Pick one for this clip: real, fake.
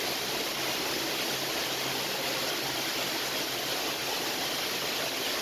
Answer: real